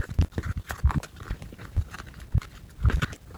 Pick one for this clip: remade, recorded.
remade